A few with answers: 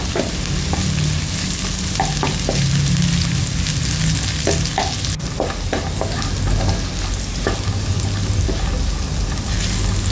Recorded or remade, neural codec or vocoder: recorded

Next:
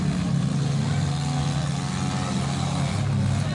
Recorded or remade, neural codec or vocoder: recorded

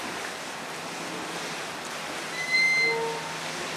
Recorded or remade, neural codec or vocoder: recorded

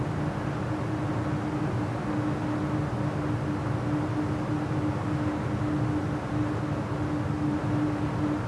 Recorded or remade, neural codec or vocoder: recorded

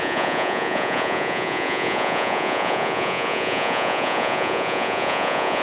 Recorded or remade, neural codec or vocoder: remade, vocoder, Vocos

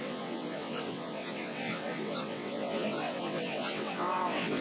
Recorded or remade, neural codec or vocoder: remade, vocoder, WaveNeXt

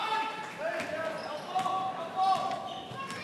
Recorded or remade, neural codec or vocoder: recorded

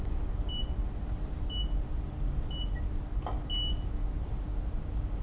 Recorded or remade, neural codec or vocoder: recorded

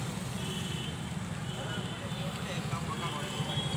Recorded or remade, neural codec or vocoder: recorded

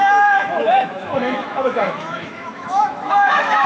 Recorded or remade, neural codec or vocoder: remade, autoencoder, DAC-VAE